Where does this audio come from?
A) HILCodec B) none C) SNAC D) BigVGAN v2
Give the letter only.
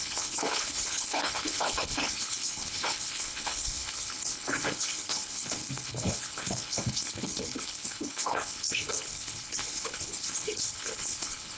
A